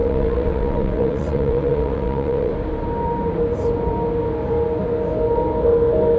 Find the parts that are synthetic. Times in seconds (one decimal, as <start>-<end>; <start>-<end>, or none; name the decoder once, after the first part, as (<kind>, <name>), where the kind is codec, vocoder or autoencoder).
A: 0.0-2.5 (vocoder, WaveNeXt)